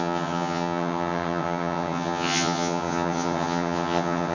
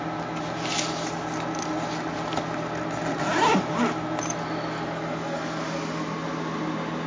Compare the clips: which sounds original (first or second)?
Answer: second